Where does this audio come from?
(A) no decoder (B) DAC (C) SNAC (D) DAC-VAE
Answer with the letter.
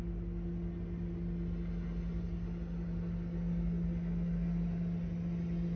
A